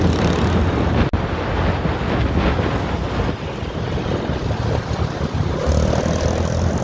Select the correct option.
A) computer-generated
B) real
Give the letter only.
B